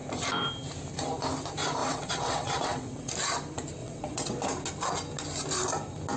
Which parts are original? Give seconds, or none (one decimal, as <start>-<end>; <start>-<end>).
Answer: 0.0-1.8; 3.1-3.8; 4.4-6.2